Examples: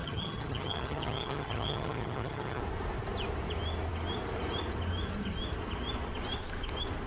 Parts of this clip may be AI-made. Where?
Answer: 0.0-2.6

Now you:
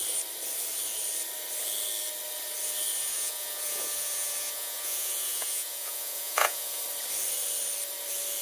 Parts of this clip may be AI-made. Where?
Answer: 3.0-6.8

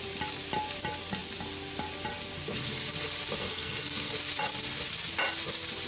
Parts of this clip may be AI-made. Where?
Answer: 3.4-4.1

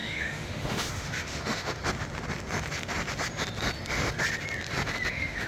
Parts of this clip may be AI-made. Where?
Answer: 0.0-1.8; 5.1-5.5

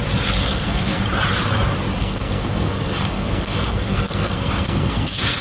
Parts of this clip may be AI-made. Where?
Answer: 0.5-1.0; 2.0-5.4